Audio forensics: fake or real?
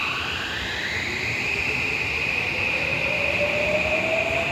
real